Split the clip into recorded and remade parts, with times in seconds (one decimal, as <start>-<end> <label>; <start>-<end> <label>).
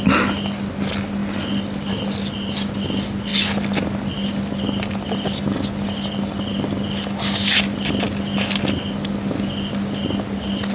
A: 0.0-10.7 recorded